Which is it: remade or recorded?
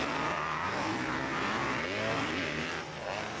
recorded